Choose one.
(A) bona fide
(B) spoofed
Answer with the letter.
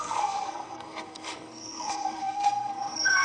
B